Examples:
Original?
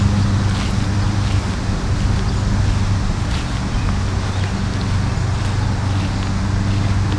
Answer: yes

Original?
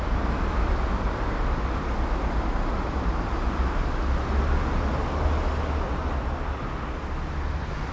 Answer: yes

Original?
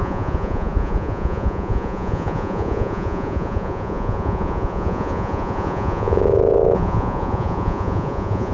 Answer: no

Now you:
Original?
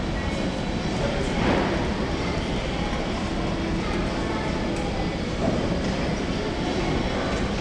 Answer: yes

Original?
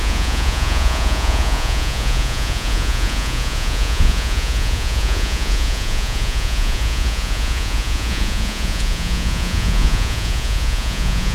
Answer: no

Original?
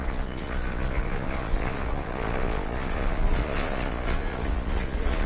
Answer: no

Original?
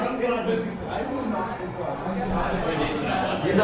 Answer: yes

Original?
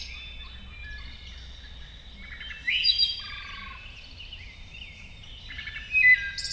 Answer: yes